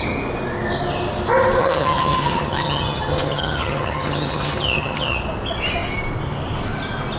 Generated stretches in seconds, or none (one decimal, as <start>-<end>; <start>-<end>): 1.6-5.2